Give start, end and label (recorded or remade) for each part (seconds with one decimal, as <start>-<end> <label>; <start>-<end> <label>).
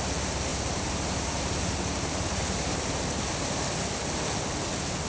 0.0-0.5 recorded; 0.5-3.0 remade; 3.0-5.1 recorded